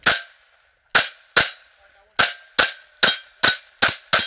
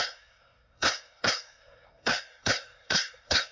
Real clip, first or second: first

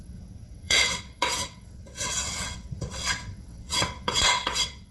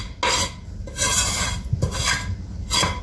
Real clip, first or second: second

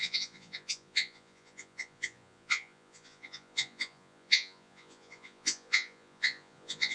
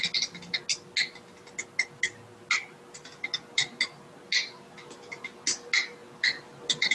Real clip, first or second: second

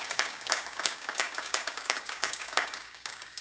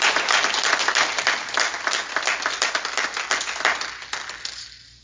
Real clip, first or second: second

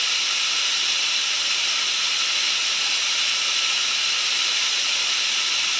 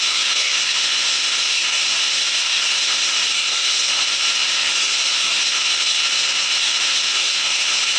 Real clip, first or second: first